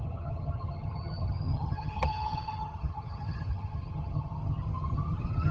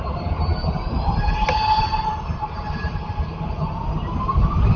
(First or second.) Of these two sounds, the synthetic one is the first